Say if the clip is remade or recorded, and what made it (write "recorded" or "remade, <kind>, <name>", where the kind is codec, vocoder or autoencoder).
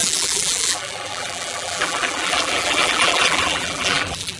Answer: remade, vocoder, BigVGAN v2